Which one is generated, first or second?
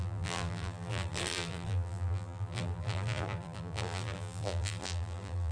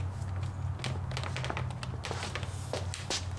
first